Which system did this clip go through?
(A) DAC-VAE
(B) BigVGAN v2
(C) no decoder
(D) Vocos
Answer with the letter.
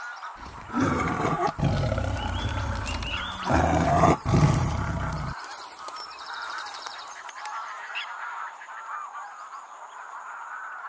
B